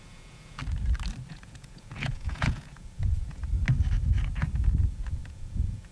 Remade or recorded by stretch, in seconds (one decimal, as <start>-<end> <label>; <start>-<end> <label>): 0.0-0.6 remade; 0.6-1.3 recorded; 1.3-3.4 remade; 3.4-4.8 recorded; 4.8-5.9 remade